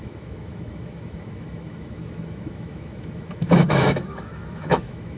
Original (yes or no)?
no